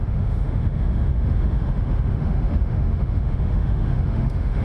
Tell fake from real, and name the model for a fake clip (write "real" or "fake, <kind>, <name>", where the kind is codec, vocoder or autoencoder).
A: fake, autoencoder, DAC-VAE